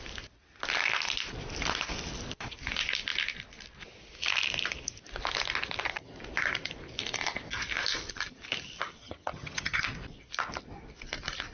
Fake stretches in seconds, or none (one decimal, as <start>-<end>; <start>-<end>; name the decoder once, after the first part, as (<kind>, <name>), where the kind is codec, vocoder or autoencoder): 9.0-9.8 (vocoder, HiFi-GAN)